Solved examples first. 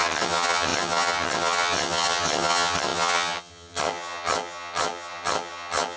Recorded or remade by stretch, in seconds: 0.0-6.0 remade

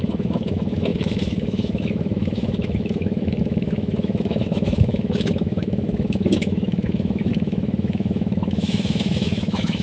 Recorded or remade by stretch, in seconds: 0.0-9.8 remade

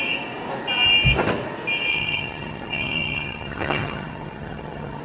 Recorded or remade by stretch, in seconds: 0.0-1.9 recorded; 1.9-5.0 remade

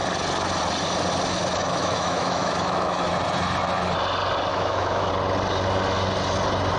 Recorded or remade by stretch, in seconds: 0.0-1.6 recorded; 1.6-3.1 remade; 3.1-4.5 recorded; 4.5-5.1 remade; 5.1-6.8 recorded

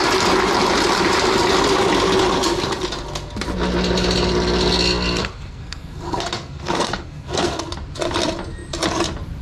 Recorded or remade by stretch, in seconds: 0.0-5.2 recorded; 5.2-7.6 remade; 7.6-9.4 recorded